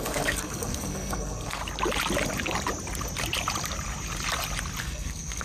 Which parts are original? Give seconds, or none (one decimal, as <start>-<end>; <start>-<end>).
1.6-4.8